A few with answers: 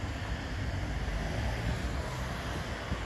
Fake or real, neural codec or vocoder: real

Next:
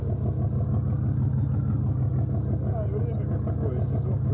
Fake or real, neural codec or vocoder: real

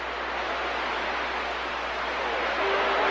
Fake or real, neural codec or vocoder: real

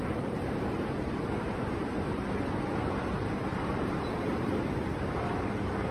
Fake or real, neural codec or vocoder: fake, vocoder, BigVGAN v2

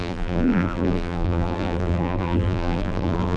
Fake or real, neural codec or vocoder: fake, vocoder, BigVGAN v2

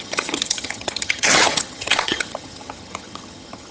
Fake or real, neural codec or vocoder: fake, vocoder, HiFi-GAN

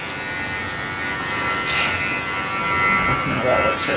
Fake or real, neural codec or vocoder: real